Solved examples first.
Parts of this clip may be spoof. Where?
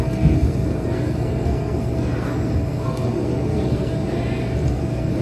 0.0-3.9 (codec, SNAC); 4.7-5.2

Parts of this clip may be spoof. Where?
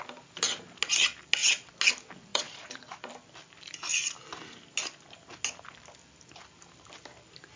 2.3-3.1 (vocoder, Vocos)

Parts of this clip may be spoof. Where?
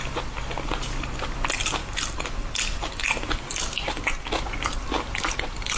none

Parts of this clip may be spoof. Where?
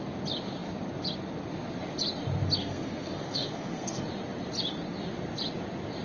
2.6-4.0 (codec, SNAC)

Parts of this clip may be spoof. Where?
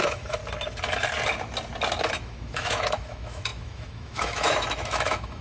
0.0-0.4 (autoencoder, DAC-VAE); 2.1-5.4